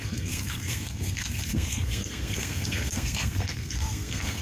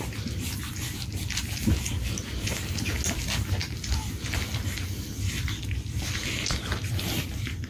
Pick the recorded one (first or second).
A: second